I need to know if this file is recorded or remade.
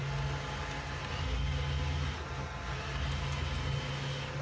recorded